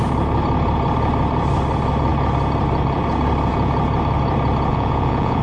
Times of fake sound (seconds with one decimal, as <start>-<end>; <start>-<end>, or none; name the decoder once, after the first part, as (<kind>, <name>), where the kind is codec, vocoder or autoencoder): 4.7-5.4 (vocoder, Vocos)